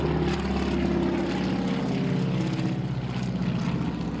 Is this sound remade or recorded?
recorded